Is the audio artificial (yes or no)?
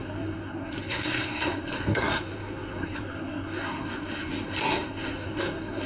yes